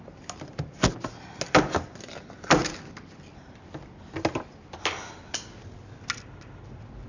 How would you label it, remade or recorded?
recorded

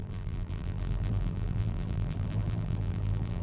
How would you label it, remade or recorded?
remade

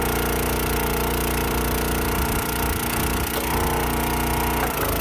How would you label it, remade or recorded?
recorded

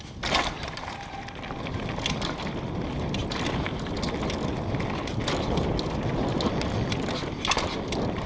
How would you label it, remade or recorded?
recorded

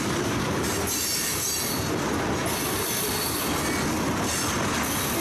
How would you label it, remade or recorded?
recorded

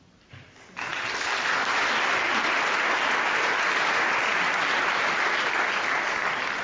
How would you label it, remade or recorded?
recorded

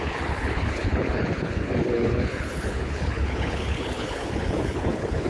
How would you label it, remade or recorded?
remade